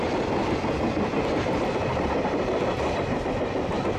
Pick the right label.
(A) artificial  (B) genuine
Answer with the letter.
B